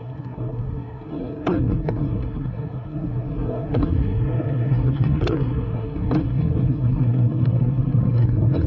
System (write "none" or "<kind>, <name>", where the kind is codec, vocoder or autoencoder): codec, SNAC